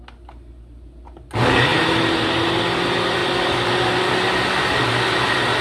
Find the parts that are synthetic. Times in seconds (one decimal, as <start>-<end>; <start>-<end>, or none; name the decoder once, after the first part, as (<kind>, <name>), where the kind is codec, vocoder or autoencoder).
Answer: none

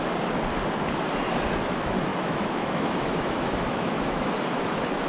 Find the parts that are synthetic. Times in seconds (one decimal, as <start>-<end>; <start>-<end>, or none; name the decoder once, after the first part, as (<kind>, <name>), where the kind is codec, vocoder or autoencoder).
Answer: 2.1-4.3 (autoencoder, DAC-VAE)

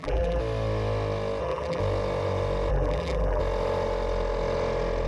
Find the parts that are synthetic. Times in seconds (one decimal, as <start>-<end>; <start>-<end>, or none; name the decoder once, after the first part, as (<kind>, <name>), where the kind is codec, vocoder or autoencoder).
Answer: 0.0-0.4 (vocoder, BigVGAN v2); 1.4-1.8; 2.7-3.4